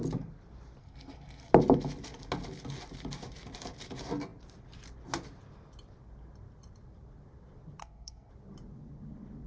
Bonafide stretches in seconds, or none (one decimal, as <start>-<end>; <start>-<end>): 0.0-0.8; 1.5-7.8; 8.3-9.5